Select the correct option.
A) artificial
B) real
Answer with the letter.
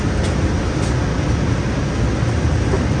B